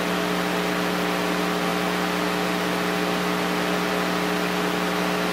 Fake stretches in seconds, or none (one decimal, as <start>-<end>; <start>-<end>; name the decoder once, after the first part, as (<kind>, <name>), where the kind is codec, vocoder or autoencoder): none